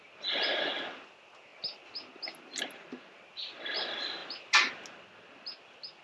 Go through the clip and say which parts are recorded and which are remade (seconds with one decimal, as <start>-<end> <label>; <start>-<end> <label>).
0.0-6.0 recorded